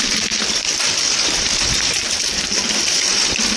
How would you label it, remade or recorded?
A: remade